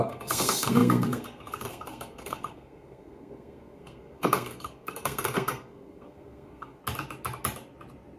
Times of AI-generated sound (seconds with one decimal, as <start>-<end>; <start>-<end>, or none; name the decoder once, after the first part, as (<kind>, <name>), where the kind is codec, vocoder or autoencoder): 0.0-6.8 (codec, SNAC)